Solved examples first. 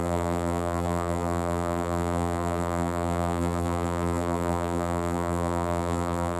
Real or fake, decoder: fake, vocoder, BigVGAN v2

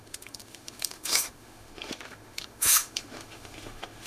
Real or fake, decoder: fake, autoencoder, DAC-VAE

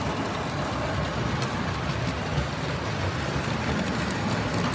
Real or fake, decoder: real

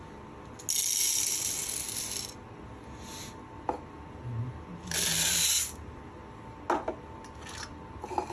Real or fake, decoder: real